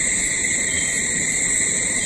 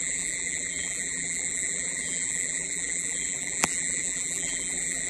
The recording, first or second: first